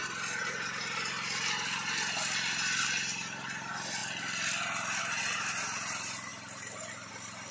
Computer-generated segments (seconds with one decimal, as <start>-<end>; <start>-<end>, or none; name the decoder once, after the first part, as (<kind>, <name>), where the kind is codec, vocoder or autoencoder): 0.0-4.0 (vocoder, BigVGAN v2); 5.0-7.5